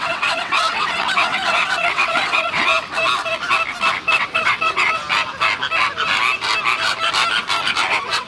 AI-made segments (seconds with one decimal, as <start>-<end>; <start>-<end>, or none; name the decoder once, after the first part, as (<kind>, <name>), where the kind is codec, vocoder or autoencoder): 0.0-2.7 (vocoder, WaveNeXt); 4.2-5.0; 7.9-8.3